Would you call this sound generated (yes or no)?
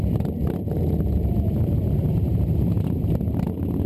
yes